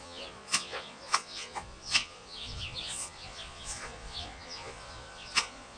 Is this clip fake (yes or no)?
yes